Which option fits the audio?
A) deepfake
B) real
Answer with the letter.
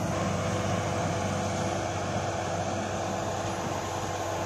B